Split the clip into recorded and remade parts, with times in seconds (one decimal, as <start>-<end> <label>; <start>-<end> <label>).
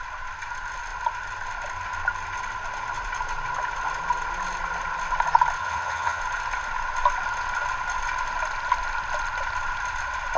0.0-5.6 recorded; 5.6-6.2 remade; 6.2-10.4 recorded